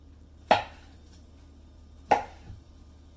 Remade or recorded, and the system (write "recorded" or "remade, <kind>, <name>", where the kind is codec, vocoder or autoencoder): recorded